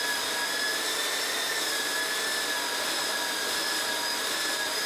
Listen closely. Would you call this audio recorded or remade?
recorded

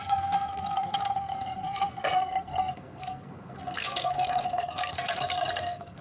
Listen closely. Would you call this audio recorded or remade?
remade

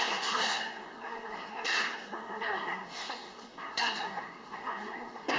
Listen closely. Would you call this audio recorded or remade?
remade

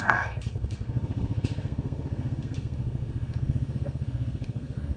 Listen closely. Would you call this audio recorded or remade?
remade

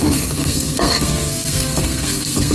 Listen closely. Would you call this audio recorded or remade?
remade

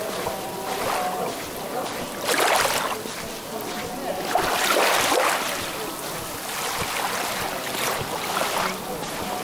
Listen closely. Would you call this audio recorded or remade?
recorded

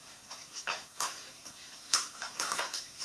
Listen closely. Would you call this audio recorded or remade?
remade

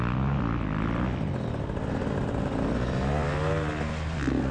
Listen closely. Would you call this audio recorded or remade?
recorded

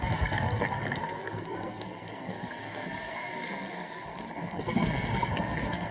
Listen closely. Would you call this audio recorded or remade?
remade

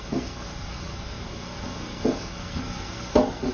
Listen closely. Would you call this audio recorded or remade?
remade